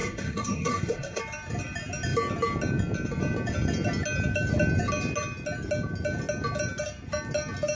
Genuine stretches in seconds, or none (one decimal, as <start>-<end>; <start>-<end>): 1.2-7.7